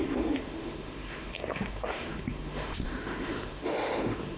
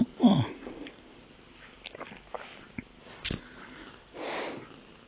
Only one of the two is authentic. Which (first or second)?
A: second